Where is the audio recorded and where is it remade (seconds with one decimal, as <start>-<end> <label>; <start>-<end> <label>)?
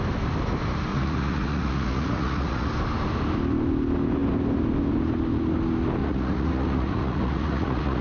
0.0-0.9 recorded; 0.9-2.7 remade; 2.7-6.0 recorded; 6.0-8.0 remade